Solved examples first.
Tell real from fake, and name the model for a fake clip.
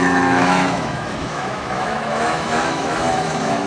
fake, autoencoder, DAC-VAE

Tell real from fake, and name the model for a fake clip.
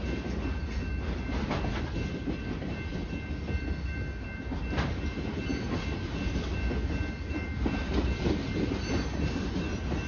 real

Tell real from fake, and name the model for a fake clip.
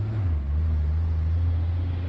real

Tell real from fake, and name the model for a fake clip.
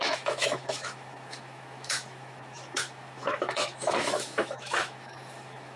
fake, autoencoder, DAC-VAE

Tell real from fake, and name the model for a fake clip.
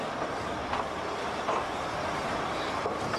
real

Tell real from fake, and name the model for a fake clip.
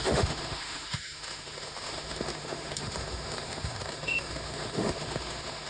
fake, autoencoder, DAC-VAE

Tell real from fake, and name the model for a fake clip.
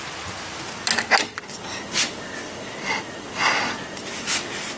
real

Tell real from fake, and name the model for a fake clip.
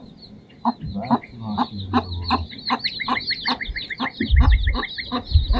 real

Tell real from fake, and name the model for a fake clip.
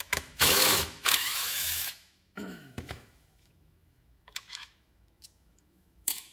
fake, autoencoder, DAC-VAE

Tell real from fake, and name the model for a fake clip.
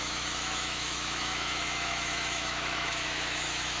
fake, autoencoder, DAC-VAE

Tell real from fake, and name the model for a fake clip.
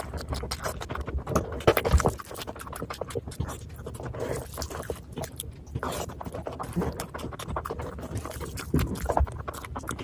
real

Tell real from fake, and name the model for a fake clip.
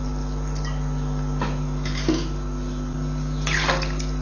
real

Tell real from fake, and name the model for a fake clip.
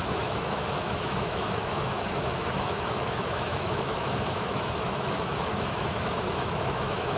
fake, autoencoder, DAC-VAE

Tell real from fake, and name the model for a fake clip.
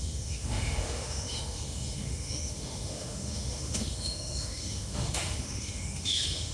fake, autoencoder, DAC-VAE